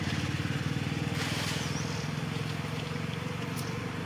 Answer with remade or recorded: recorded